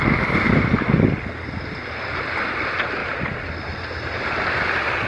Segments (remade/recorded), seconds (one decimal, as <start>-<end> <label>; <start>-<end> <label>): 0.0-5.1 recorded